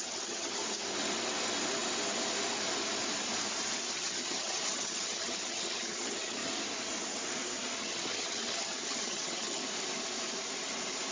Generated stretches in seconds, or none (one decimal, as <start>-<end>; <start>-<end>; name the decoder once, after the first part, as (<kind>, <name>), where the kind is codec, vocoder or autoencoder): 0.0-0.6 (vocoder, HiFi-GAN); 3.9-6.4; 7.8-9.6

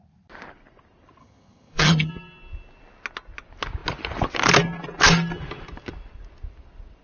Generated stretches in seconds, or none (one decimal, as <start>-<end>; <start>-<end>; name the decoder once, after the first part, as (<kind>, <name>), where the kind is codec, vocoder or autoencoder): 1.2-2.1 (vocoder, HiFi-GAN)

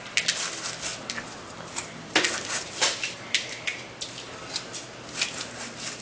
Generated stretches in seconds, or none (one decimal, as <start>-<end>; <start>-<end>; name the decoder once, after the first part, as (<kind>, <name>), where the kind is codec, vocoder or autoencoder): none

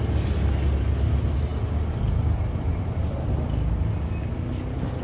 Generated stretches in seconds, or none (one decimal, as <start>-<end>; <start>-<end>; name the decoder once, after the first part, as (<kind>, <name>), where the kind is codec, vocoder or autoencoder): none

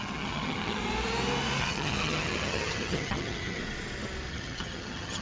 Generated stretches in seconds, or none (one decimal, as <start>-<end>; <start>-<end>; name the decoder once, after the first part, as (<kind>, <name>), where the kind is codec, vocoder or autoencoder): 0.0-0.8 (vocoder, HiFi-GAN); 1.6-3.6; 4.3-5.2

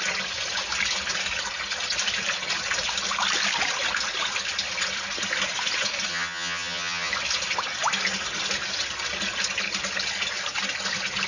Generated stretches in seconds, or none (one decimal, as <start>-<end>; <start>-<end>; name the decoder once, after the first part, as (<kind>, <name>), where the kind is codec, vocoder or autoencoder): 6.1-7.1 (vocoder, HiFi-GAN)

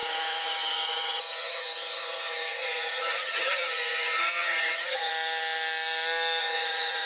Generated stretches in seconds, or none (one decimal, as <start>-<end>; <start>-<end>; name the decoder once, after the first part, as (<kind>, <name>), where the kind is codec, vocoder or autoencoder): 0.0-5.1 (vocoder, HiFi-GAN); 6.4-7.1